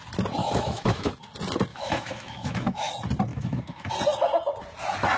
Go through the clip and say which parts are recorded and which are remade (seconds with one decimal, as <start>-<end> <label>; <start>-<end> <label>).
0.0-0.4 recorded; 0.4-1.1 remade; 1.1-1.7 recorded; 1.7-2.9 remade; 2.9-3.3 recorded; 3.3-3.9 remade; 3.9-5.2 recorded

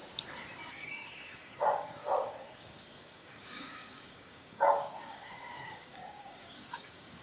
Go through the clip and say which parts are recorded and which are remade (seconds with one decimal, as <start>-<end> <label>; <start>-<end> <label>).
0.0-0.7 recorded; 0.7-7.2 remade

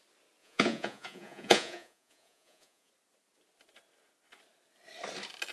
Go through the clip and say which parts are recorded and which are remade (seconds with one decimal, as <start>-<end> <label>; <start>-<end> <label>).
0.0-0.4 recorded; 0.4-2.9 remade; 2.9-5.5 recorded

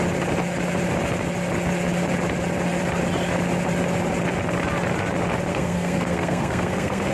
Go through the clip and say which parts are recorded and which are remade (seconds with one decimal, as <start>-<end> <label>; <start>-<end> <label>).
0.0-5.5 recorded; 5.5-7.1 remade

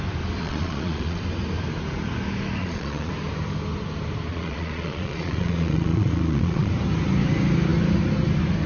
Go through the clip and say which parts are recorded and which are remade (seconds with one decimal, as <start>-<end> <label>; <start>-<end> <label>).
0.0-0.4 recorded; 0.4-1.2 remade; 1.2-2.6 recorded; 2.6-3.1 remade; 3.1-4.3 recorded; 4.3-6.7 remade; 6.7-8.7 recorded

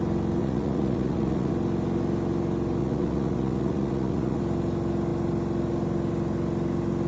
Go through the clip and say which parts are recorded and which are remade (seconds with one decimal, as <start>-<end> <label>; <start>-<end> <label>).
0.0-0.4 recorded; 0.4-1.5 remade; 1.5-2.8 recorded; 2.8-4.4 remade; 4.4-7.1 recorded